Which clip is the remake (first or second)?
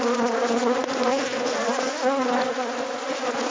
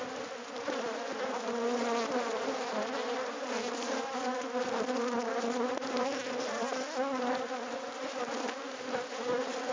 first